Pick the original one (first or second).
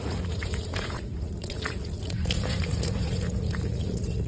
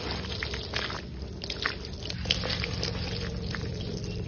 second